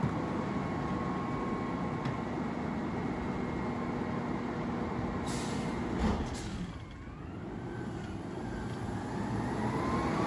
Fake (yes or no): no